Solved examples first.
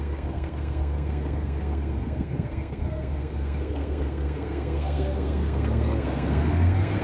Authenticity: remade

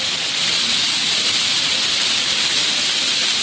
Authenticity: recorded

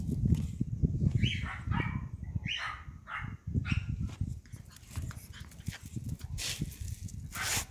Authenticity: recorded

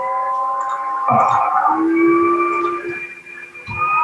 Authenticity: recorded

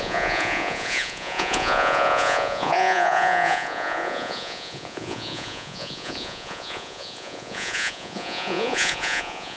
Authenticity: remade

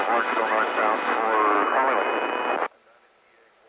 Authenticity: recorded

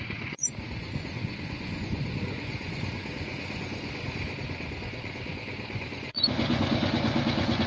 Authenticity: remade